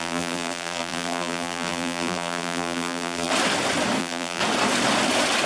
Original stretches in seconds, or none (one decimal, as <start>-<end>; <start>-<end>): 3.3-4.0; 4.4-5.5